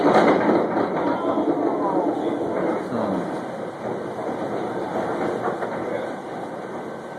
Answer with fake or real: real